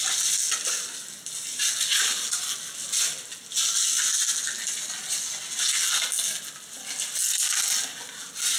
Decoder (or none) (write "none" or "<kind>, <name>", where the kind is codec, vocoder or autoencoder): none